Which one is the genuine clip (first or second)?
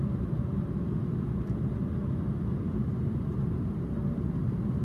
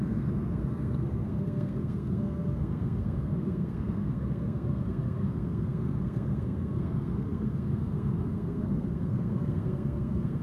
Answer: first